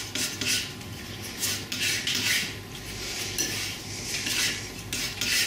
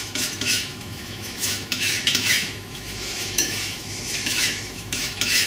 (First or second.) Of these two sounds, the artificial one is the second